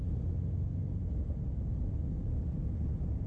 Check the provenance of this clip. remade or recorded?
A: recorded